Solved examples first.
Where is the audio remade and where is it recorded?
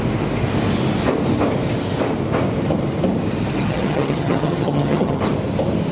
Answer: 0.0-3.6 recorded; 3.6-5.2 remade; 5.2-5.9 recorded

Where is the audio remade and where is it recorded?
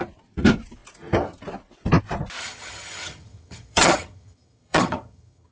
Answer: 0.0-2.4 recorded; 2.4-5.5 remade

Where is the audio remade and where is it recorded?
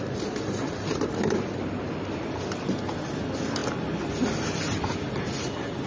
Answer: 0.0-5.9 recorded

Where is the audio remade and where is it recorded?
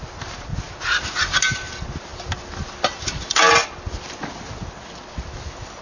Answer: 0.0-5.8 recorded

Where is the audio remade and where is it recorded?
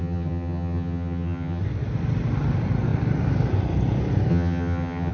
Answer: 0.0-1.6 remade; 1.6-4.3 recorded; 4.3-5.1 remade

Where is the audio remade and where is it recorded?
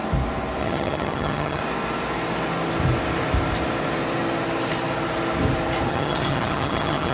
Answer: 0.0-0.6 recorded; 0.6-1.6 remade; 1.6-5.9 recorded; 5.9-7.1 remade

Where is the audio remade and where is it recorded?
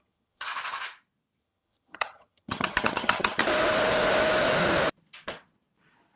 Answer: 0.0-0.5 remade; 0.5-1.4 recorded; 1.4-3.4 remade; 3.4-6.2 recorded